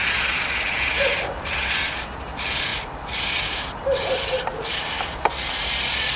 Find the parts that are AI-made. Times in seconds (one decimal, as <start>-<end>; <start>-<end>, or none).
none